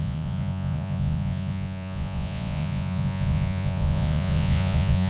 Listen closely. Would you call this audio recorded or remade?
remade